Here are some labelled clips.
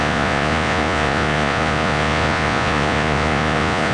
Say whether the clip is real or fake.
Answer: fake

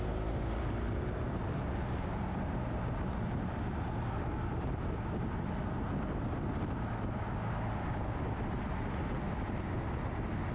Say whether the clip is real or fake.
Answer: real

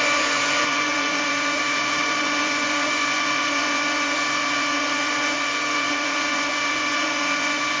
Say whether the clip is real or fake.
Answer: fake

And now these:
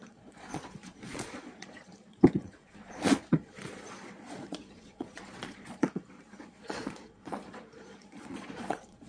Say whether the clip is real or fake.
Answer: fake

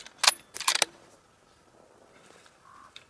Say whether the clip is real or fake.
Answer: real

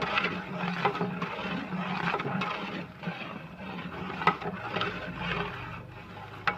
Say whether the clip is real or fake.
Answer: real